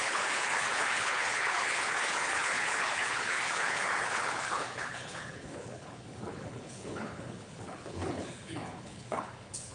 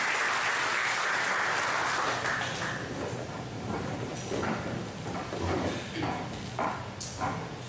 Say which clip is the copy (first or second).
first